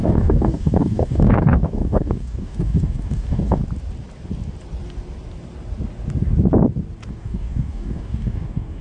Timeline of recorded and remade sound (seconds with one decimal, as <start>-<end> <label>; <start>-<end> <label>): 0.0-3.6 remade; 3.6-7.1 recorded; 7.1-8.8 remade